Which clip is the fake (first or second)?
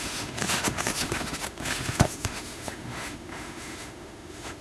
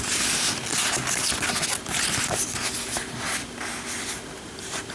first